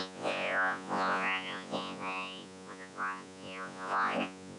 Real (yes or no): no